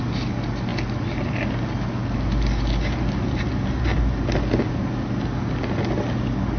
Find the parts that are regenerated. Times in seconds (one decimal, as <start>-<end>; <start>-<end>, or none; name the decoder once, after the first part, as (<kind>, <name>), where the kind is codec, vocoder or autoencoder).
none